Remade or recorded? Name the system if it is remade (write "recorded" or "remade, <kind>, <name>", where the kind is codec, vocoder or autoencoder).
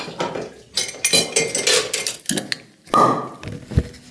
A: recorded